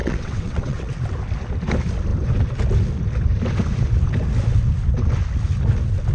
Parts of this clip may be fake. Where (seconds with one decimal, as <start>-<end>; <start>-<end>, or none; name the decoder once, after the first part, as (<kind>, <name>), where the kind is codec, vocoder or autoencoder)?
0.0-0.9 (vocoder, WaveNeXt)